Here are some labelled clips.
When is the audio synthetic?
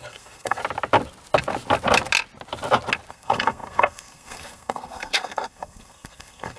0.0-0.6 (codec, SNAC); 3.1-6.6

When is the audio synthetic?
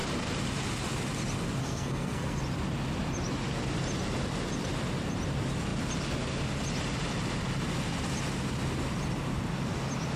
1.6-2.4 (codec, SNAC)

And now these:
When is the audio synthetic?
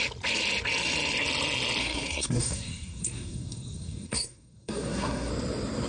1.8-5.3 (codec, SNAC)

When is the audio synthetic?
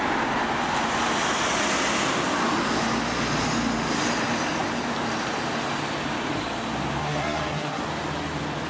7.0-7.8 (codec, SNAC)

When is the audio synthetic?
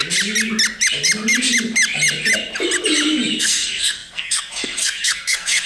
3.4-5.7 (codec, SNAC)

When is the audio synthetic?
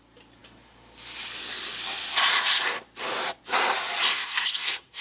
4.1-5.0 (codec, SNAC)